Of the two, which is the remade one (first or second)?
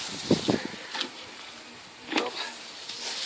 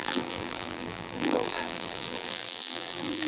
second